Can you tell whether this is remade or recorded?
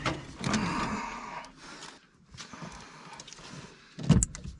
recorded